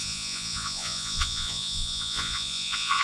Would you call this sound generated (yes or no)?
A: yes